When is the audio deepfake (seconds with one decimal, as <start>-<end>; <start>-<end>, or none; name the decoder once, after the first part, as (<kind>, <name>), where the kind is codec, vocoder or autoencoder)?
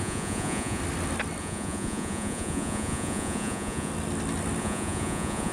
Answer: 0.0-0.8 (vocoder, Vocos); 1.4-3.9; 4.6-5.5